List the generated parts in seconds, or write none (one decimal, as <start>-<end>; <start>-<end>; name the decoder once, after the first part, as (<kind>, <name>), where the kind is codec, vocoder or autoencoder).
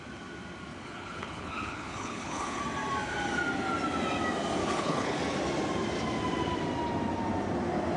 0.7-2.6 (codec, HILCodec); 4.6-5.2